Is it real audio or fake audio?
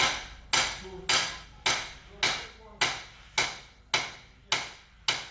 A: real